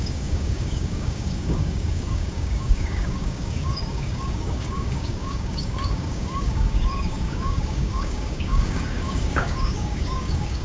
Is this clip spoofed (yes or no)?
yes